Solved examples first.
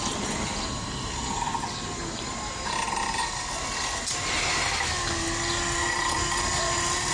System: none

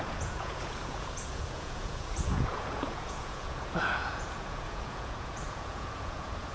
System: vocoder, Vocos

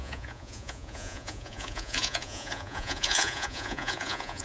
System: vocoder, Vocos